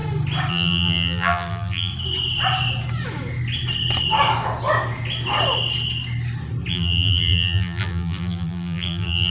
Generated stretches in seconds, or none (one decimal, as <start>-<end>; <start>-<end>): 0.5-1.9; 6.7-9.3